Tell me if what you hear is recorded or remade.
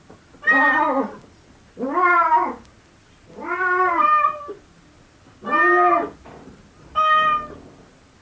recorded